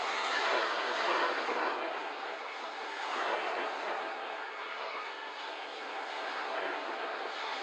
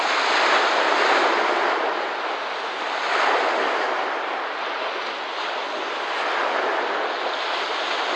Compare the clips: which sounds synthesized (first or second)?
first